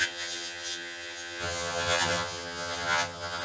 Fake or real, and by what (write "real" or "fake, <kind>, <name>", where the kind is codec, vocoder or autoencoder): fake, vocoder, HiFi-GAN